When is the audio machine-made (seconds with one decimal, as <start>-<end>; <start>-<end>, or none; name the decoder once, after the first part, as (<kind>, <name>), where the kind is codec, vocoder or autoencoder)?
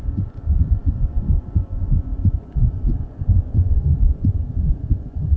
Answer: 0.0-5.4 (vocoder, Vocos)